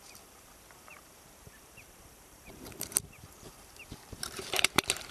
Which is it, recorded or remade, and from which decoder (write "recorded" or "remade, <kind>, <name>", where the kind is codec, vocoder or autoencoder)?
remade, vocoder, BigVGAN v2